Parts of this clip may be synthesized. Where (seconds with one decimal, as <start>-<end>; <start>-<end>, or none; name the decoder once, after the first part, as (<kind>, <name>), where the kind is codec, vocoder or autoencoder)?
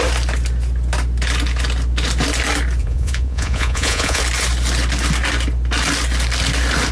2.8-4.2 (vocoder, Vocos)